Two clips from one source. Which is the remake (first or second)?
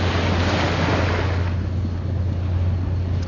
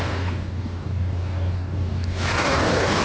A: second